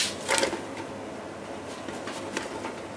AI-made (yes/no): no